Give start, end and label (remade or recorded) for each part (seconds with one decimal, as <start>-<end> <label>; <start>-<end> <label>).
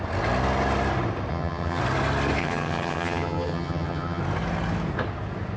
0.0-1.3 recorded; 1.3-1.8 remade; 1.8-2.4 recorded; 2.4-4.2 remade; 4.2-5.6 recorded